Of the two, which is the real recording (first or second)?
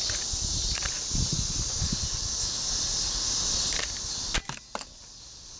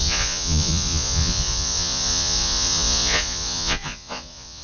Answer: first